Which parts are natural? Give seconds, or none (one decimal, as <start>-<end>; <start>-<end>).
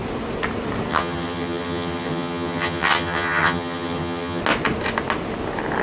0.0-0.9; 4.4-5.8